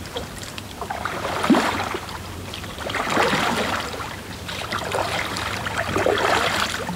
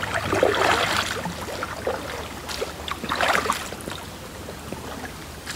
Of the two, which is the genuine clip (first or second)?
second